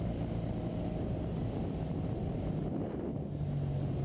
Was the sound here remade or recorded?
recorded